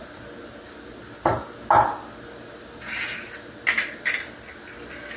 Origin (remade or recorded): recorded